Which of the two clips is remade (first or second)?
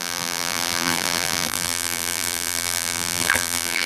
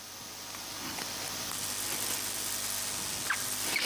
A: first